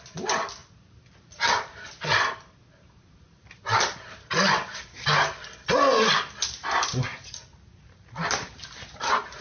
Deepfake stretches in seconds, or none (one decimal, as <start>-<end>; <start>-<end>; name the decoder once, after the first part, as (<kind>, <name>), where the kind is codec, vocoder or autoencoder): none